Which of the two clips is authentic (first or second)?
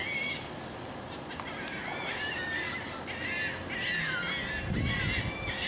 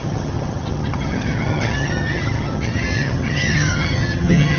first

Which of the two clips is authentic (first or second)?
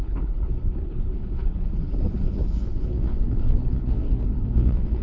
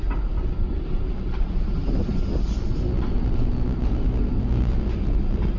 second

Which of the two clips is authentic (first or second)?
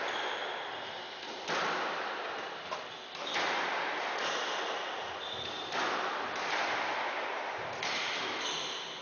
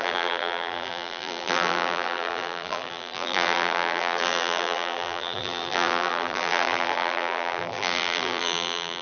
first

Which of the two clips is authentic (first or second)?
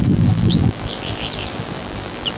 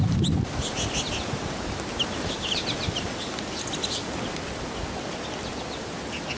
second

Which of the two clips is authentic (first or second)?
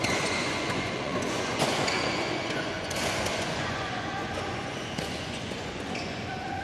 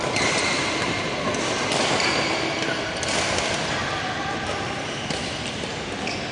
second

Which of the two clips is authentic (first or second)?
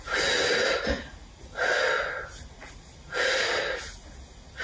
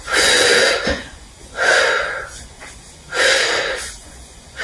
first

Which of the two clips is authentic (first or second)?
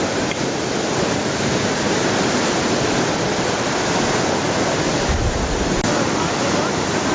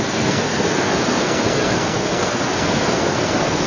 first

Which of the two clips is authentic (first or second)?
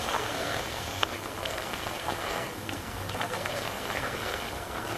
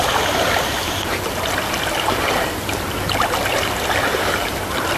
second